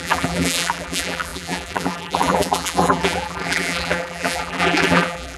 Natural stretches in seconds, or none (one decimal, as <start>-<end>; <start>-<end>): none